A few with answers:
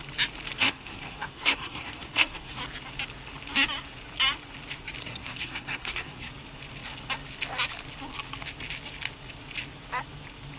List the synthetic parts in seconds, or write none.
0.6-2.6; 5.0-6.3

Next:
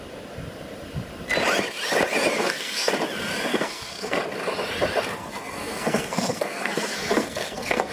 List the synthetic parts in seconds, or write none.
2.4-2.9; 3.5-4.2; 5.1-7.9

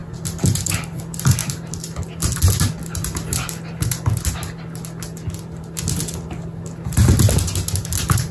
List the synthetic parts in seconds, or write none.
none

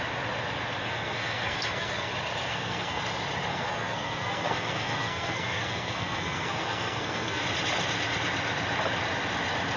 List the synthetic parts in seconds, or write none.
0.8-2.1; 2.5-3.0; 3.5-7.4

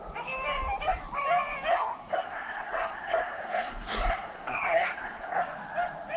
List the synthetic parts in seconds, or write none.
1.7-5.4

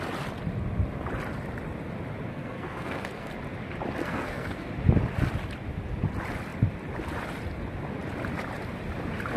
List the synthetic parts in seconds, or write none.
2.3-3.3; 4.0-4.7

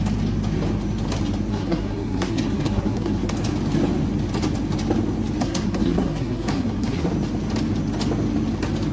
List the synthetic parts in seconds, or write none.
1.5-3.3; 5.4-7.1

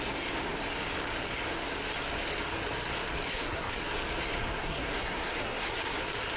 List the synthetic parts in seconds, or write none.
3.3-3.8; 4.6-6.0